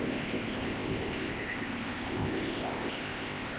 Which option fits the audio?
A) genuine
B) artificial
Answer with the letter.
B